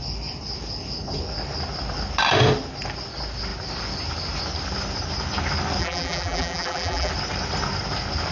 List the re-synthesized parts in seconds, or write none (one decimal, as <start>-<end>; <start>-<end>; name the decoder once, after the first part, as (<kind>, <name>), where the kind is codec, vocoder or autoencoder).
5.8-7.1 (vocoder, BigVGAN v2)